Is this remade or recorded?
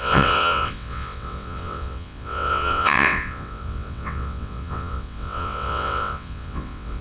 remade